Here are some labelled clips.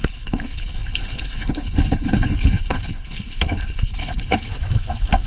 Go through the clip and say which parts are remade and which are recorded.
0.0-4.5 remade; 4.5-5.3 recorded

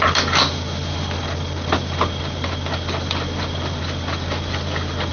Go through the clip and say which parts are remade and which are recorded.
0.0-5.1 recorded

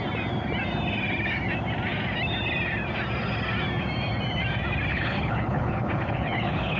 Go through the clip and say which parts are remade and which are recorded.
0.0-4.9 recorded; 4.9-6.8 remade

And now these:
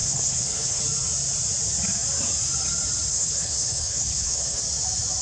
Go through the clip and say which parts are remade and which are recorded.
0.0-0.8 remade; 0.8-3.1 recorded; 3.1-4.6 remade; 4.6-5.2 recorded